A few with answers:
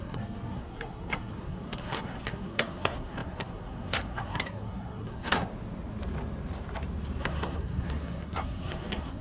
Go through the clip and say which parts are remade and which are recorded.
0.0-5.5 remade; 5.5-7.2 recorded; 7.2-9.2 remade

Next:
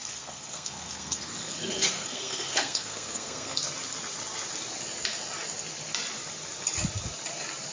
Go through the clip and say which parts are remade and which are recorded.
0.0-3.6 remade; 3.6-7.7 recorded